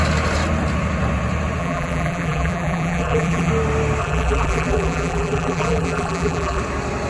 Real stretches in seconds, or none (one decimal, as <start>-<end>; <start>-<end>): 0.0-1.6; 3.5-4.0; 6.6-7.1